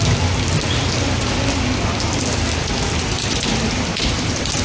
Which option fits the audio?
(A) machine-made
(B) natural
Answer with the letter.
B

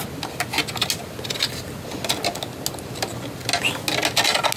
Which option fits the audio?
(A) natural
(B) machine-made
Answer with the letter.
A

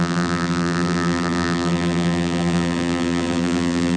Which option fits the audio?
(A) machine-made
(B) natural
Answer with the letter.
A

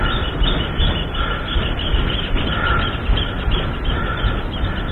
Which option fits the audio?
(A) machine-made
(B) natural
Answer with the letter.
B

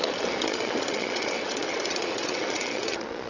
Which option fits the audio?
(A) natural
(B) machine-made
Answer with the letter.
B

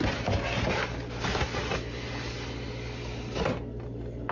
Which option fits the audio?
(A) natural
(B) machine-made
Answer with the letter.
A